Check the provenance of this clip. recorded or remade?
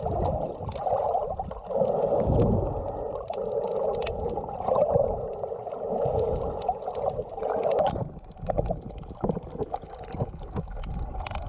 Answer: recorded